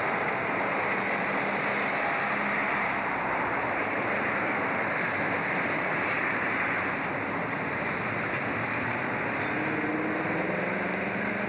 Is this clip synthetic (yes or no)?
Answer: no